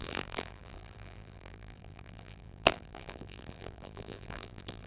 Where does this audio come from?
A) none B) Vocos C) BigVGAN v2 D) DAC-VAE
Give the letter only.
C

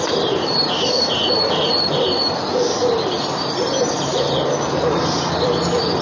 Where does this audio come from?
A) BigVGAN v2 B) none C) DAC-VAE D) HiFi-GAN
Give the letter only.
B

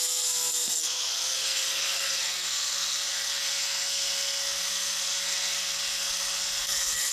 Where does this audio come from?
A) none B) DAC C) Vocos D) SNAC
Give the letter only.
D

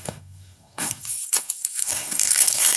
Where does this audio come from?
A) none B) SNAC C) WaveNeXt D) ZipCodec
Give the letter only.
B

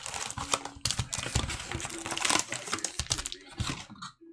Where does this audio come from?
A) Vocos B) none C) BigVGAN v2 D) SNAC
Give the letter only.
B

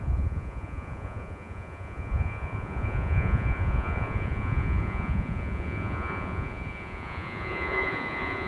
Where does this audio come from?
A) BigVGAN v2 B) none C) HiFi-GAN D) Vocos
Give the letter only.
D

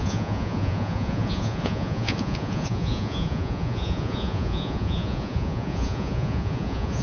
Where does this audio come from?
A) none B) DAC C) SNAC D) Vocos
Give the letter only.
D